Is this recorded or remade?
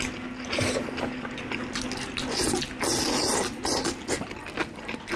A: recorded